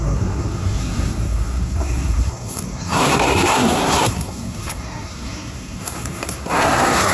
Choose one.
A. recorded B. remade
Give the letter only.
B